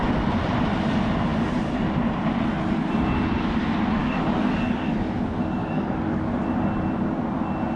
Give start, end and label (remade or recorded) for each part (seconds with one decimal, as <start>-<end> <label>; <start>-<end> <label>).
0.0-4.0 recorded; 4.0-4.9 remade; 4.9-5.6 recorded; 5.6-6.4 remade; 6.4-7.8 recorded